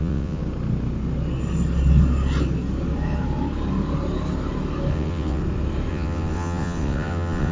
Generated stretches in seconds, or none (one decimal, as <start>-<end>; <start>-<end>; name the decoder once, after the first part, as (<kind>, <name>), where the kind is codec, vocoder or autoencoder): 0.0-0.4 (vocoder, WaveNeXt); 4.9-5.4; 5.9-7.5